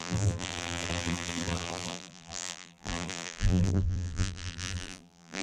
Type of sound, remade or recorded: remade